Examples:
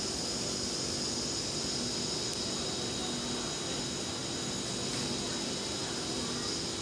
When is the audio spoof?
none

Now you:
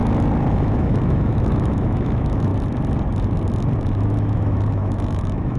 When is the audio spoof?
0.5-2.5 (autoencoder, DAC-VAE); 3.8-5.6

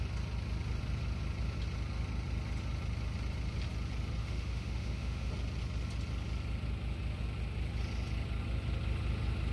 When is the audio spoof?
4.2-5.3 (autoencoder, DAC-VAE)

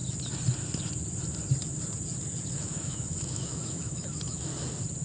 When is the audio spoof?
2.5-4.5 (autoencoder, DAC-VAE)

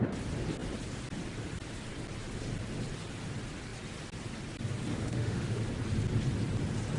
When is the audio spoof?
4.9-5.6 (autoencoder, DAC-VAE)

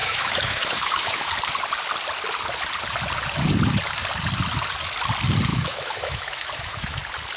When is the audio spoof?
0.0-1.3 (autoencoder, DAC-VAE); 5.5-7.0

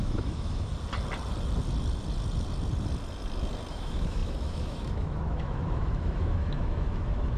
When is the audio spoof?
0.0-0.7 (autoencoder, DAC-VAE); 3.7-7.4